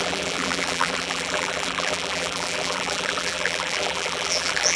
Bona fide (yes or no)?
no